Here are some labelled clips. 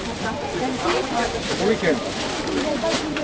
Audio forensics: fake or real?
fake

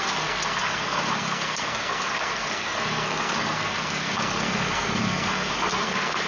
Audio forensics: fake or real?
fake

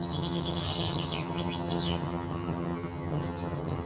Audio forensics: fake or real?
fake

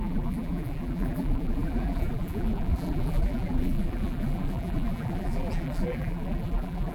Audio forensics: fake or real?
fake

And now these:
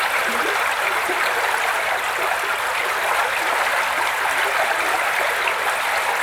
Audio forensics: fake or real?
real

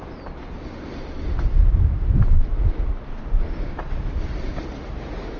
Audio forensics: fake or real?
real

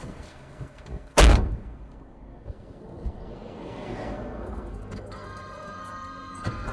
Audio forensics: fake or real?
fake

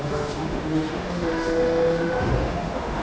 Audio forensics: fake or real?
fake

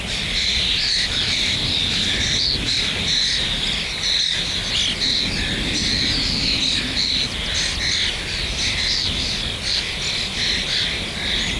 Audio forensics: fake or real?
real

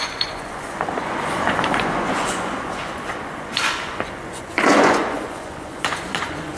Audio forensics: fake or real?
fake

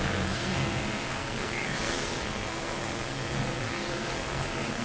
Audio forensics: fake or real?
fake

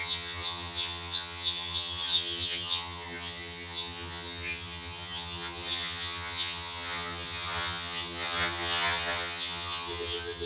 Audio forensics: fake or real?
fake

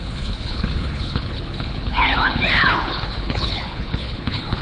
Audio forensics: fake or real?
fake